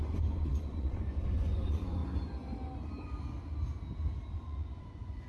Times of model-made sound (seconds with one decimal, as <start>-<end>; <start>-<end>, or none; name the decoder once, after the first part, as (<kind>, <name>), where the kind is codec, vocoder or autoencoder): 0.0-2.0 (vocoder, Vocos); 4.3-5.3